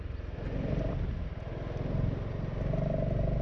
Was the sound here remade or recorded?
recorded